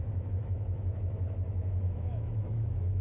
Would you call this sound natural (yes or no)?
no